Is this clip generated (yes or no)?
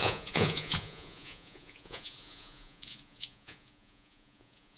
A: yes